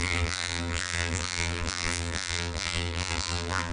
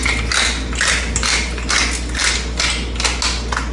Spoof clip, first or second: first